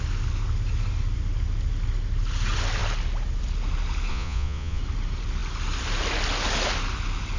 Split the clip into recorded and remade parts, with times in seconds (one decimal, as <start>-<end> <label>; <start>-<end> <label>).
0.0-4.1 recorded; 4.1-4.8 remade; 4.8-7.4 recorded